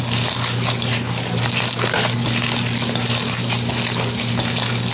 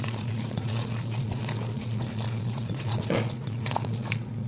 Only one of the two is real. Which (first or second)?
first